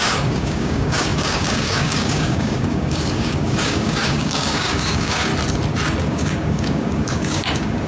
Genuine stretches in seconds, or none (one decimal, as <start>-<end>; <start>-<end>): 5.3-6.0